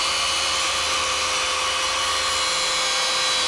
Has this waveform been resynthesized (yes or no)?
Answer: no